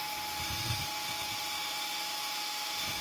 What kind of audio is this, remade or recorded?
remade